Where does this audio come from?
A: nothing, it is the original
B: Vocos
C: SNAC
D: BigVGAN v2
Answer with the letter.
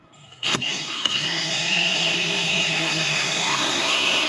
C